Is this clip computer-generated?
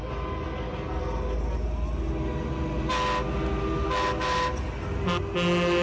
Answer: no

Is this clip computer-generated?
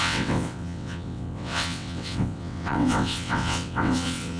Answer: yes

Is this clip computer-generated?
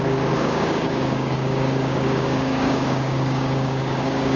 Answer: yes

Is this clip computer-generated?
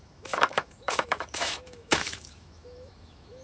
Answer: yes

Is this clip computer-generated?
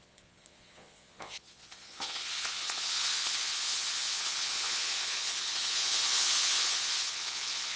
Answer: yes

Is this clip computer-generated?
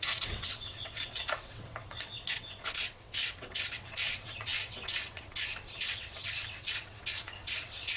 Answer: yes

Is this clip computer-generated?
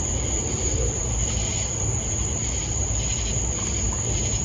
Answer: yes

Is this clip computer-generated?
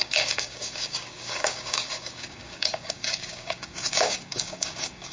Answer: yes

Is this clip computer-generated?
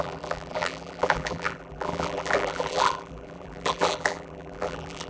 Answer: yes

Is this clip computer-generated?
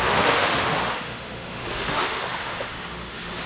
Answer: yes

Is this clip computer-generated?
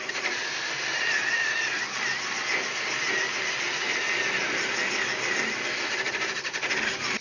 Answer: no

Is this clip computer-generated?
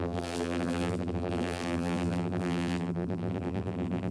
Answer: yes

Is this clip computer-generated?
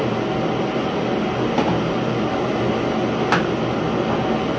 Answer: no